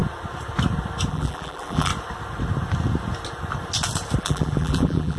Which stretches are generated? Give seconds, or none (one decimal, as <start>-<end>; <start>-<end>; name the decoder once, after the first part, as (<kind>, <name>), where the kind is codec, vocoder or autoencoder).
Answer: 1.1-1.9 (vocoder, BigVGAN v2); 4.2-5.2